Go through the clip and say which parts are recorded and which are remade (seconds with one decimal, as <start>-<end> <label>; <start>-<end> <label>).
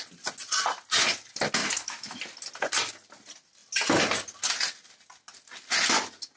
0.0-1.6 recorded; 1.6-2.2 remade; 2.2-6.4 recorded